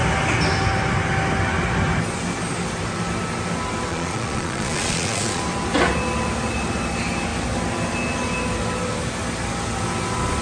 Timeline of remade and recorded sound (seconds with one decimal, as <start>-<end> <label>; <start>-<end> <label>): 0.0-3.9 recorded; 3.9-5.4 remade; 5.4-10.4 recorded

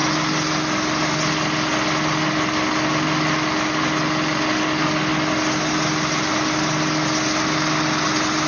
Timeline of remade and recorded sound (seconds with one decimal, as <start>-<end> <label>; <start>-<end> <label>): 0.0-8.5 recorded

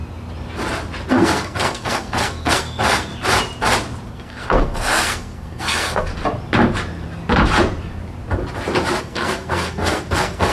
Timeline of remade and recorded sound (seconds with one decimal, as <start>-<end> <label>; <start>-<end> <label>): 0.0-1.1 recorded; 1.1-3.1 remade; 3.1-4.1 recorded; 4.1-6.1 remade; 6.1-9.0 recorded; 9.0-10.5 remade

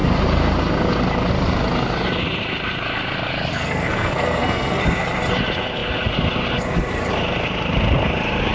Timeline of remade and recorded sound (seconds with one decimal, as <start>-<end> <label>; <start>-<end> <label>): 0.0-3.5 recorded; 3.5-4.8 remade; 4.8-8.5 recorded

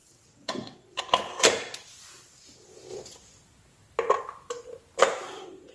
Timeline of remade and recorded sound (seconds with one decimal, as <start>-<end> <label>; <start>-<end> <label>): 0.0-1.0 remade; 1.0-5.7 recorded

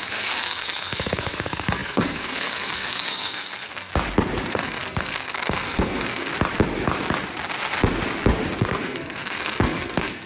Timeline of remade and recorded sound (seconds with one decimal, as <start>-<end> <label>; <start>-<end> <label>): 0.0-3.9 remade; 3.9-4.5 recorded; 4.5-6.3 remade; 6.3-8.6 recorded; 8.6-10.3 remade

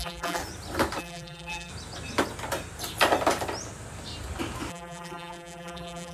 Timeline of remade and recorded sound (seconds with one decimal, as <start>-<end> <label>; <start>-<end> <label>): 0.0-0.4 remade; 0.4-1.0 recorded; 1.0-1.7 remade; 1.7-4.7 recorded; 4.7-6.1 remade